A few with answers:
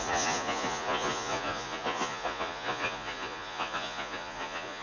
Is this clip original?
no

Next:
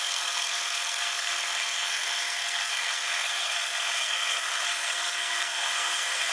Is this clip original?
no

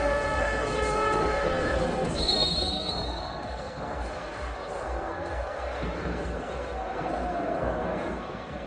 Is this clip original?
no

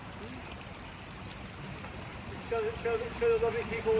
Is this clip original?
yes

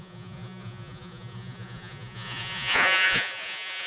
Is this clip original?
no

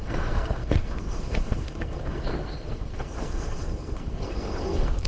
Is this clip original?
no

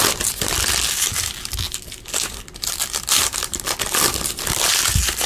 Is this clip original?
yes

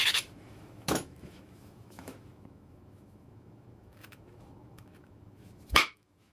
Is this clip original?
no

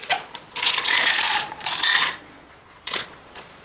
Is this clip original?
no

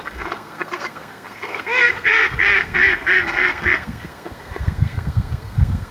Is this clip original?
no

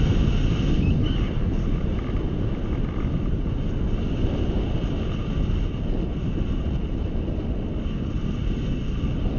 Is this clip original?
yes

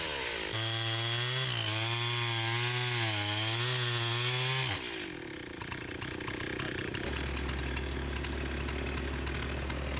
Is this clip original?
yes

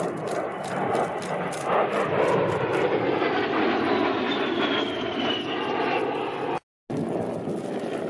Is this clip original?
yes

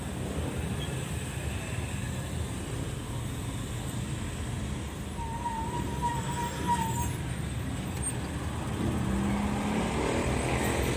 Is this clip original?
yes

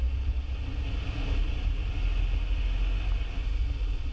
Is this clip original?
yes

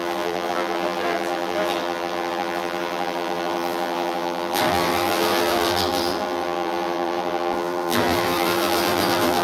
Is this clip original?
no